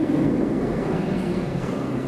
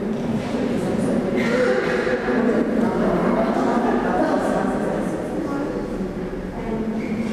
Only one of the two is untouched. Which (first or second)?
second